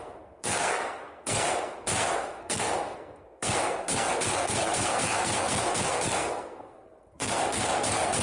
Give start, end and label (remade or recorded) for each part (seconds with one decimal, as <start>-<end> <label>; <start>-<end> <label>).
0.0-8.2 remade